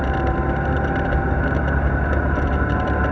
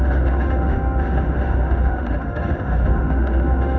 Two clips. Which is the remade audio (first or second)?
second